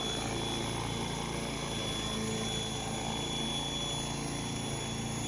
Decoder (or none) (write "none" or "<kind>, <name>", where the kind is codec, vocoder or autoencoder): none